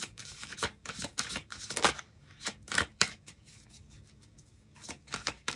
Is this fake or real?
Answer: fake